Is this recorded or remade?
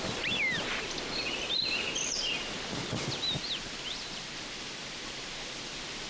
recorded